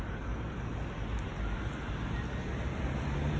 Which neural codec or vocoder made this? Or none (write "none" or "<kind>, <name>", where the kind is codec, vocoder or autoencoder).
none